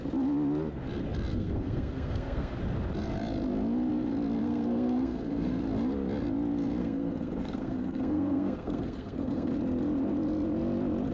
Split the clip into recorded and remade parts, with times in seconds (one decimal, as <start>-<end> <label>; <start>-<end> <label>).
0.0-1.3 recorded; 1.3-2.6 remade; 2.6-4.4 recorded; 4.4-5.6 remade; 5.6-6.8 recorded; 6.8-9.5 remade; 9.5-11.1 recorded